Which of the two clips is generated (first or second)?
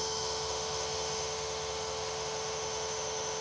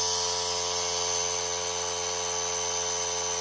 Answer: first